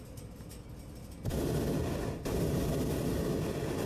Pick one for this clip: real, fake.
real